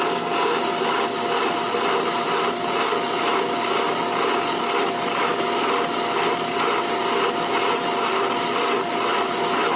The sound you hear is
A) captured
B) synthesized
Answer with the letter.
A